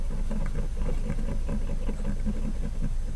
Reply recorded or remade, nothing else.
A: recorded